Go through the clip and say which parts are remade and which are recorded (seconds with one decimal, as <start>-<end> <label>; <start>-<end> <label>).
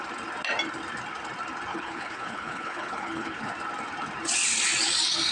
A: 0.0-1.7 recorded; 1.7-3.5 remade; 3.5-5.3 recorded